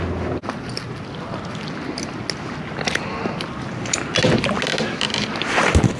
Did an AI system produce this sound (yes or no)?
no